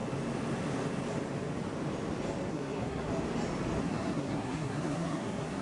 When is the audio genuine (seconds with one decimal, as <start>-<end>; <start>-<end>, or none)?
0.0-2.5; 3.1-3.8